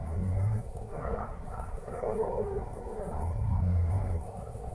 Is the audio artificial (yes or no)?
yes